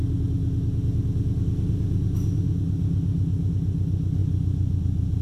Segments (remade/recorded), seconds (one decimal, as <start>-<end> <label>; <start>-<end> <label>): 0.0-5.2 recorded